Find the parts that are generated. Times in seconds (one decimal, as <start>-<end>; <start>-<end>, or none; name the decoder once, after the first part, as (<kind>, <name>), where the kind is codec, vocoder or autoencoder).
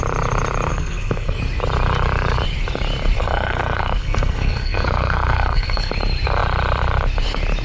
0.7-1.4 (codec, SNAC); 3.2-5.9